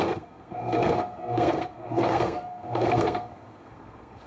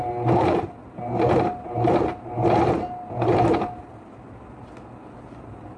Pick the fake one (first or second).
first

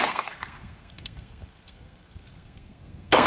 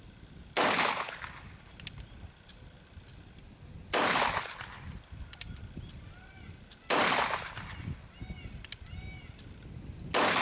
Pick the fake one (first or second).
first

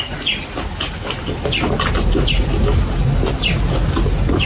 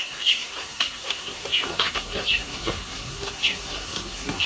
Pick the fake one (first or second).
second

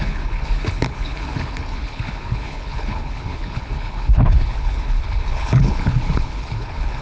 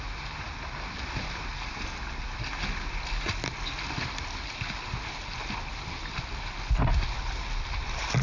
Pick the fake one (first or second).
first